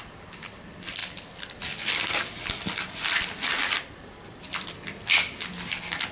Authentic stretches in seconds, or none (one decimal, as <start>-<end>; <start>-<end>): 0.0-6.1